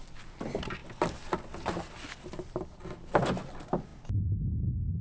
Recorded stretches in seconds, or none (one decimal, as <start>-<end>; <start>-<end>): 0.0-5.0